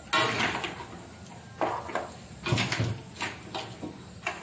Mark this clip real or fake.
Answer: real